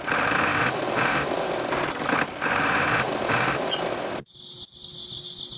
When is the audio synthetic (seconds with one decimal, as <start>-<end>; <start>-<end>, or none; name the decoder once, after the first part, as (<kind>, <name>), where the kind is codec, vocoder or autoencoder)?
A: none